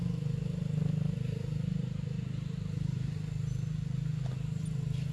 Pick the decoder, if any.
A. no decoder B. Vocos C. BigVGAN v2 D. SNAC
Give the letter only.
A